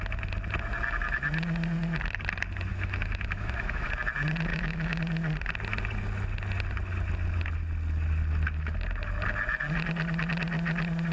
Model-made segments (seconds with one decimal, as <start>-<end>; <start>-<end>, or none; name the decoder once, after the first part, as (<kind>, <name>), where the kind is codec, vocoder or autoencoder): 2.7-3.9 (autoencoder, DAC-VAE); 4.5-5.0